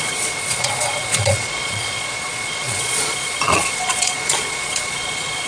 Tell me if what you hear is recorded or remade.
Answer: remade